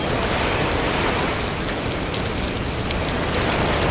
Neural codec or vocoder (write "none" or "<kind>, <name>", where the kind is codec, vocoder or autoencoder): none